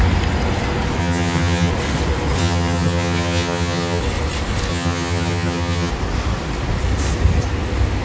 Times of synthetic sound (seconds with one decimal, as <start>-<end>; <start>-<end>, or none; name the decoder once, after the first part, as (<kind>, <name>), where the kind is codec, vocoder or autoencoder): 1.0-1.7 (vocoder, HiFi-GAN); 2.4-4.0; 4.7-5.9